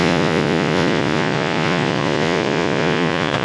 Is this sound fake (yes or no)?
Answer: yes